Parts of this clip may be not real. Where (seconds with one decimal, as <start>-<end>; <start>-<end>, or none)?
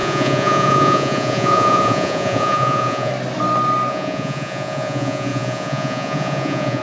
0.0-3.1; 3.9-6.8